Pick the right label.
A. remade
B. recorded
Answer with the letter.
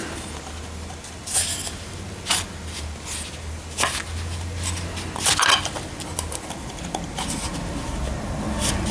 B